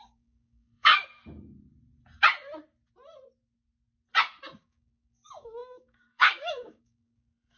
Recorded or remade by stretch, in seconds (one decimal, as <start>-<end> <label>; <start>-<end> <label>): 0.0-0.9 remade; 0.9-4.6 recorded; 4.6-7.6 remade